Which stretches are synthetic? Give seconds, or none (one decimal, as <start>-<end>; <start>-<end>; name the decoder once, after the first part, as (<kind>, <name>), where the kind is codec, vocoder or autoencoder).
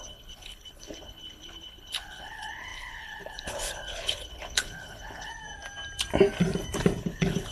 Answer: 0.0-5.3 (codec, HILCodec); 7.0-7.5